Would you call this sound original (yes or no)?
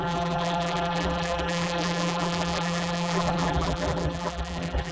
no